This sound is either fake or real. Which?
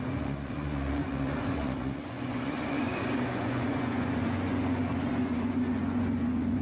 fake